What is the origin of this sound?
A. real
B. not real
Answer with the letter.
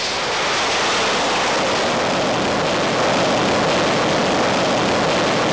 A